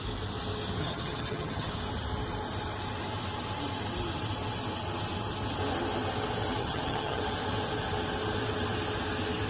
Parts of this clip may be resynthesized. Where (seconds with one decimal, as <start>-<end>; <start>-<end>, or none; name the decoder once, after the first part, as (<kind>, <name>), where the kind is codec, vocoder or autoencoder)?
0.8-1.7 (vocoder, HiFi-GAN); 6.6-7.2